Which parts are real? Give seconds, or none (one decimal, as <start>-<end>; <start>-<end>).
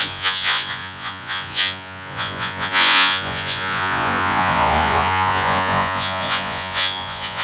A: none